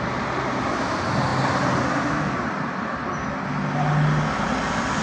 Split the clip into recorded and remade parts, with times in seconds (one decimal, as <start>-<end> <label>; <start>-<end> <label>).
0.0-5.0 recorded